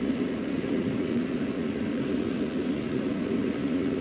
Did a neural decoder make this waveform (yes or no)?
yes